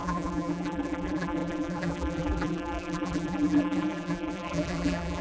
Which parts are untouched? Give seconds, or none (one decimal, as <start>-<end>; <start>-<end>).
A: none